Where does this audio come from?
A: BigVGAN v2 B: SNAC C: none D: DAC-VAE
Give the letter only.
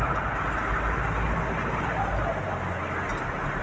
C